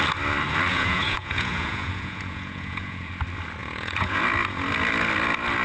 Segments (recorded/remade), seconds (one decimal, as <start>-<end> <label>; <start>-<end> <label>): 0.0-0.7 recorded; 0.7-3.1 remade; 3.1-3.6 recorded; 3.6-4.2 remade; 4.2-5.6 recorded